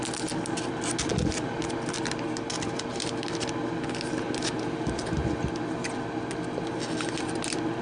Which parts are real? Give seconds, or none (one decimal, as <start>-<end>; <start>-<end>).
0.0-7.8